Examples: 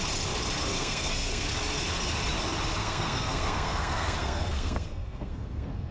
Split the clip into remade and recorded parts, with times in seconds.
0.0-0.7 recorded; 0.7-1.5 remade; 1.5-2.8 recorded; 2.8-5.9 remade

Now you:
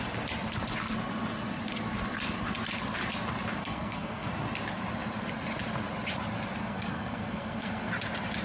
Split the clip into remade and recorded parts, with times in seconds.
0.0-3.6 recorded; 3.6-4.3 remade; 4.3-6.6 recorded; 6.6-7.9 remade; 7.9-8.4 recorded